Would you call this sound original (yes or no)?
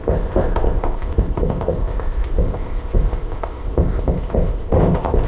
no